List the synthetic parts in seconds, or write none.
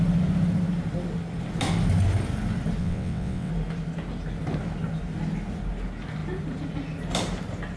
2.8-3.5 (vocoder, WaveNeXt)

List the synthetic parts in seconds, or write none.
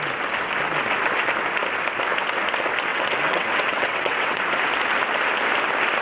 2.9-4.4 (vocoder, WaveNeXt)